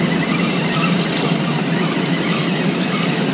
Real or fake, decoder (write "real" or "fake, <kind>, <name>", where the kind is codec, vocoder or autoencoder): real